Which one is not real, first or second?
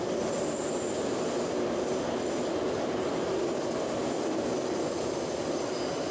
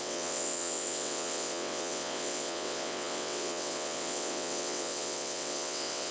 second